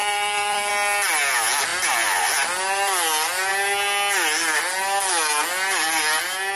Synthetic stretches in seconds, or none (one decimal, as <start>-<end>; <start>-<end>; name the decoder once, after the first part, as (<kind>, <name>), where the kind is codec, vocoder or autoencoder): 0.0-0.7 (vocoder, BigVGAN v2); 1.7-2.2

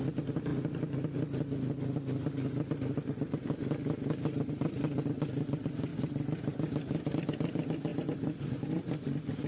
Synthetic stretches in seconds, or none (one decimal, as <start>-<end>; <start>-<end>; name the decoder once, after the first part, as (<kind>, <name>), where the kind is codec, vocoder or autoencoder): 0.0-0.5 (vocoder, BigVGAN v2); 4.5-5.9; 6.7-9.5